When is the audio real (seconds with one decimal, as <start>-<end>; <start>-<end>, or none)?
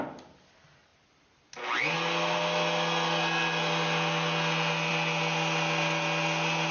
0.0-6.7